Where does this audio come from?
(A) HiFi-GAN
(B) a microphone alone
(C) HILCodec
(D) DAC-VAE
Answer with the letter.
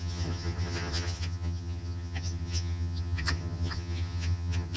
A